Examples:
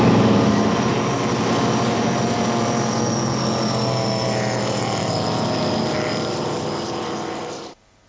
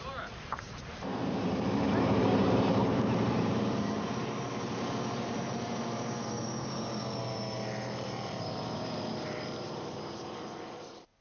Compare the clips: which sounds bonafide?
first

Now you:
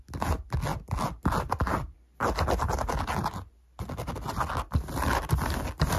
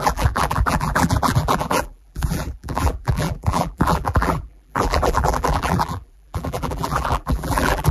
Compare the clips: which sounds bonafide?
first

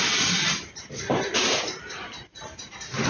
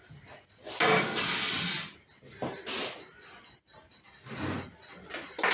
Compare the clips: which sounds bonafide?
second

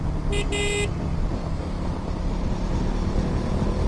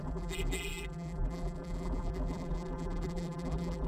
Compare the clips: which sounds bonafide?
first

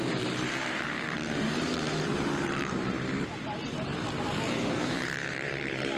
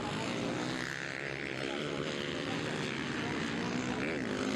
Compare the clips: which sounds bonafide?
second